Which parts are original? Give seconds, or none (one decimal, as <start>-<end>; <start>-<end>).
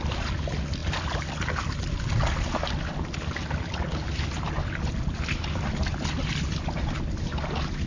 0.0-7.9